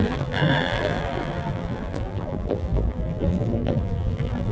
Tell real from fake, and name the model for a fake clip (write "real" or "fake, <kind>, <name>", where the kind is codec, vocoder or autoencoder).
fake, vocoder, BigVGAN v2